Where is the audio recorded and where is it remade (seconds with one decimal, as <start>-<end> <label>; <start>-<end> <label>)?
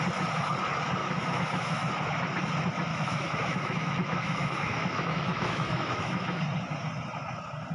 0.0-1.0 recorded; 1.0-1.9 remade; 1.9-2.9 recorded; 2.9-6.4 remade; 6.4-7.7 recorded